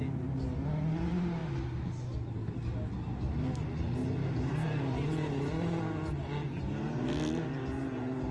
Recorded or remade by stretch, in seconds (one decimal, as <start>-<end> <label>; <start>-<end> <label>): 0.0-8.3 recorded